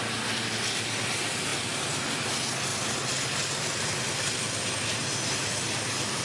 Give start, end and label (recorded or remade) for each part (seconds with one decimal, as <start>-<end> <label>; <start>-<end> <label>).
0.0-1.5 recorded; 1.5-2.1 remade; 2.1-6.2 recorded